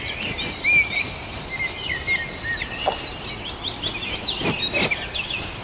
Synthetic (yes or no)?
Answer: no